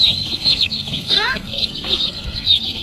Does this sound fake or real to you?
fake